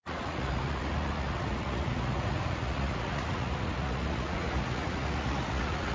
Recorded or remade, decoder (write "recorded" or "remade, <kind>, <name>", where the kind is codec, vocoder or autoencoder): remade, vocoder, Vocos